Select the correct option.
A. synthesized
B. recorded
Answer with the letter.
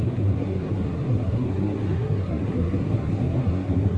A